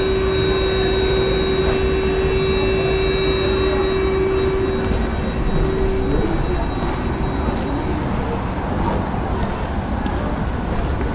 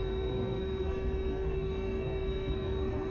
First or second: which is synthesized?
second